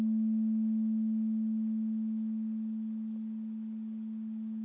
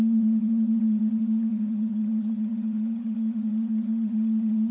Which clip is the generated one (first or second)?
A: second